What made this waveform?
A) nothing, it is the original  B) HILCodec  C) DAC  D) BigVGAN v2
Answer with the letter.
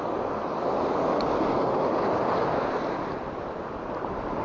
A